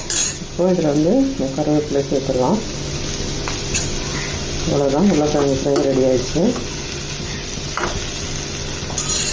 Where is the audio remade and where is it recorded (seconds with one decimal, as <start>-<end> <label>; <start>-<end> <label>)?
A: 0.0-9.3 recorded